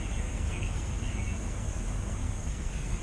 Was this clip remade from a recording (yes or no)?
yes